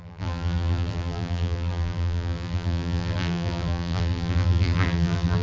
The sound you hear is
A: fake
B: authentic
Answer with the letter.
A